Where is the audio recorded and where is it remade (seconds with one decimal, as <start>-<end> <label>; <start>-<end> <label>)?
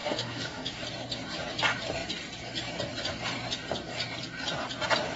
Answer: 0.0-0.8 remade; 0.8-5.2 recorded